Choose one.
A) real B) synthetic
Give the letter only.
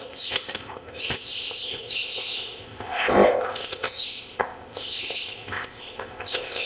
B